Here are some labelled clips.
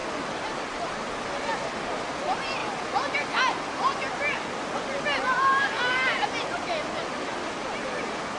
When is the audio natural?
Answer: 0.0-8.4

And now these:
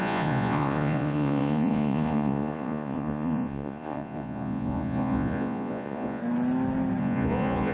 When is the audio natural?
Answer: 6.2-7.0

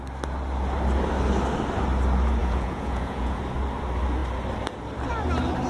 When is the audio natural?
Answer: 0.0-2.4; 3.4-5.7

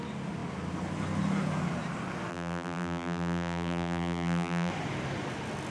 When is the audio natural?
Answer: 0.0-2.3; 4.7-5.7

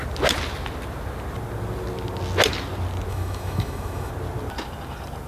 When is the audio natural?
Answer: 0.0-3.1; 4.1-5.3

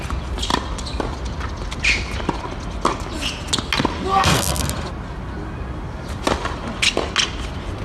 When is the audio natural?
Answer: 0.0-4.1; 4.6-7.8

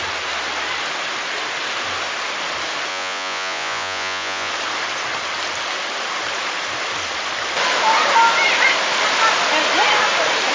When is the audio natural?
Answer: 0.0-2.9; 4.5-10.5